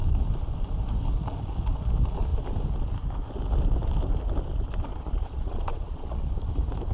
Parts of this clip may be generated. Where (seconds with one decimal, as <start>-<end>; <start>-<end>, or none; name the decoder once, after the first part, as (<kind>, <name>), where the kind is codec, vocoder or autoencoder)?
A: 4.9-6.3 (vocoder, Vocos)